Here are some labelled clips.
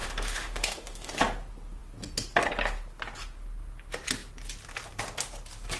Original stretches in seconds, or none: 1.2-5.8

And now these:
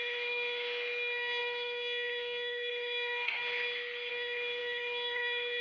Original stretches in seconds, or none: 3.4-4.1

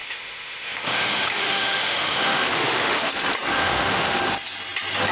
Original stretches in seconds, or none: 3.1-3.6; 4.2-5.1

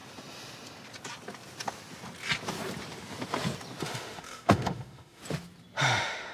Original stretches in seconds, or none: 0.0-3.8; 5.2-5.8

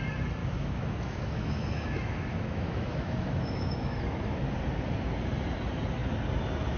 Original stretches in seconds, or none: 0.0-0.4; 4.5-6.8